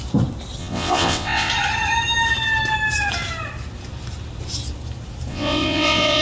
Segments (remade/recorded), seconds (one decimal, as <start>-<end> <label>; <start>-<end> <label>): 0.0-0.6 recorded; 0.6-1.5 remade; 1.5-5.3 recorded; 5.3-6.2 remade